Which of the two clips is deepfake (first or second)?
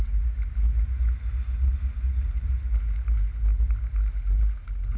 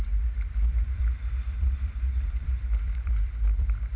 second